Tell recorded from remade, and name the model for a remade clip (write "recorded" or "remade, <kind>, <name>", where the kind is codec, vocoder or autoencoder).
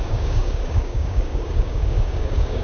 remade, codec, DAC